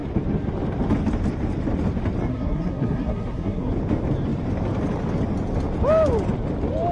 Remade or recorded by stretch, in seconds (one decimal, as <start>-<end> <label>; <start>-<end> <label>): 0.0-2.3 recorded; 2.3-3.7 remade; 3.7-6.9 recorded